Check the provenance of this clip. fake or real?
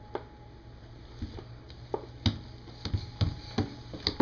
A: real